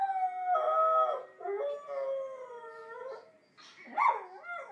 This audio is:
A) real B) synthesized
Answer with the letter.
A